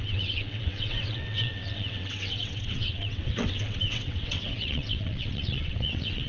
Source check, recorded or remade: remade